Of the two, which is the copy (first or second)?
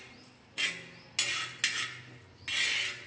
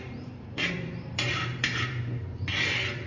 second